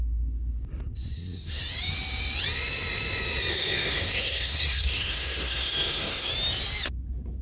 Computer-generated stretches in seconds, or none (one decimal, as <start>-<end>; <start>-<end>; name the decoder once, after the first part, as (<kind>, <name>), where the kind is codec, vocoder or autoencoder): 1.1-1.6 (codec, SNAC); 3.5-6.3